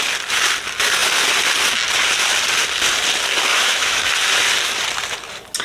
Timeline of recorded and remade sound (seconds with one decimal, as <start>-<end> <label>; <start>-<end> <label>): 0.0-3.5 recorded; 3.5-4.1 remade; 4.1-5.6 recorded

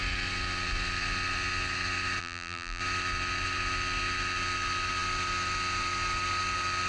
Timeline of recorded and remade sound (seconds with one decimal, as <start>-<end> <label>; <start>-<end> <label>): 0.0-2.2 recorded; 2.2-2.8 remade; 2.8-6.9 recorded

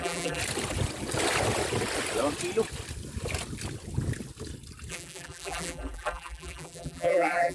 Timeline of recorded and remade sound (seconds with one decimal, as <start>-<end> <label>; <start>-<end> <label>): 0.0-0.4 remade; 0.4-4.9 recorded; 4.9-7.5 remade

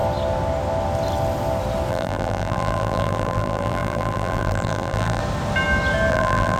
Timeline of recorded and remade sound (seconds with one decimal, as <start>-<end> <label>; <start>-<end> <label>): 0.0-1.9 recorded; 1.9-5.2 remade; 5.2-6.1 recorded; 6.1-6.6 remade

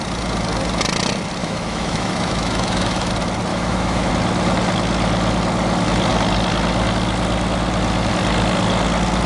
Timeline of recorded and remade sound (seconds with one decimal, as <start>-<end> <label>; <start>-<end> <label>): 0.0-1.4 recorded; 1.4-3.1 remade; 3.1-3.5 recorded; 3.5-4.1 remade; 4.1-9.3 recorded